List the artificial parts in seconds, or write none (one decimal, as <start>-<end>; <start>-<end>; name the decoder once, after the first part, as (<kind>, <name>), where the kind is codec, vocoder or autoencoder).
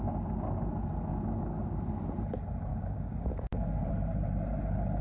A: 1.1-1.8 (codec, DAC); 2.7-3.9